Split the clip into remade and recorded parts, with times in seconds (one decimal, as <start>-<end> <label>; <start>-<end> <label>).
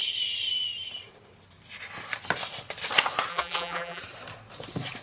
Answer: 0.0-3.3 recorded; 3.3-4.0 remade; 4.0-5.0 recorded